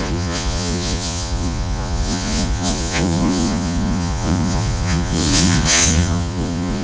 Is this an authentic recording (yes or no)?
no